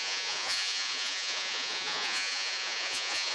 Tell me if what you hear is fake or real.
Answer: fake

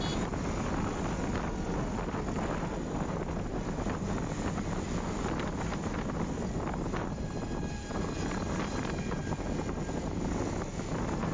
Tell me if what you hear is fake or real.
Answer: real